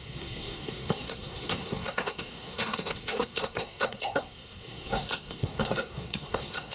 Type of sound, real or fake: fake